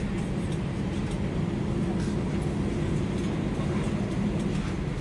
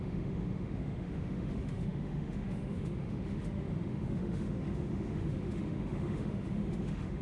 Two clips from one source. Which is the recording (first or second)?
first